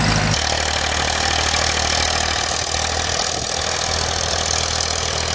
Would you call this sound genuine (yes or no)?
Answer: yes